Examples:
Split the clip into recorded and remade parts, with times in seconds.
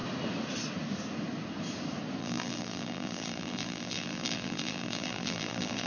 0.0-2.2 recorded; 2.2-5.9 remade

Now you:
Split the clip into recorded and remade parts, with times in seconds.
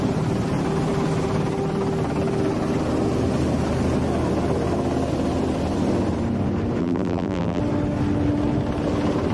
0.0-6.8 recorded; 6.8-7.6 remade; 7.6-9.3 recorded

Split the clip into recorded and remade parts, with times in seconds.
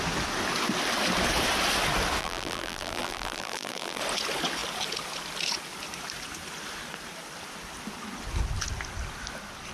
0.0-2.2 recorded; 2.2-4.0 remade; 4.0-9.7 recorded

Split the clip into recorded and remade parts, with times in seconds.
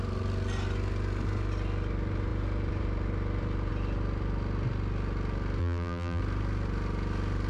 0.0-5.6 recorded; 5.6-6.2 remade; 6.2-7.5 recorded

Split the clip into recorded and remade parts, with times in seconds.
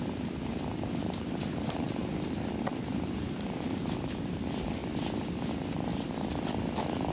0.0-2.0 remade; 2.0-2.6 recorded; 2.6-4.8 remade; 4.8-5.5 recorded; 5.5-5.9 remade; 5.9-7.1 recorded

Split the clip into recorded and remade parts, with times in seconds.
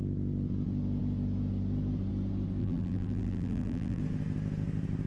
0.0-2.6 recorded; 2.6-4.0 remade; 4.0-5.1 recorded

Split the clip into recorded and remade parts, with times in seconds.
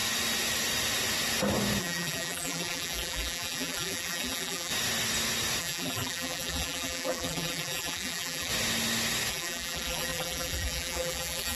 0.0-1.8 recorded; 1.8-4.7 remade; 4.7-5.6 recorded; 5.6-8.5 remade; 8.5-9.3 recorded; 9.3-11.6 remade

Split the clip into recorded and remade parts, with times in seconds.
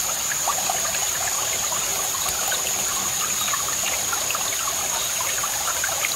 0.0-6.2 remade